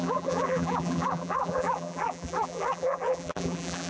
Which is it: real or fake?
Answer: fake